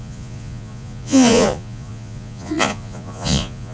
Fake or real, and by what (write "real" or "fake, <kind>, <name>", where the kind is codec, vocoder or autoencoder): fake, vocoder, Vocos